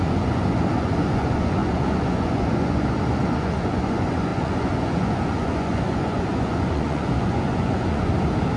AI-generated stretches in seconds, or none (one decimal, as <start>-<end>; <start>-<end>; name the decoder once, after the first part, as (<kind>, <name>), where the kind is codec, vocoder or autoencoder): 0.0-8.1 (vocoder, Vocos)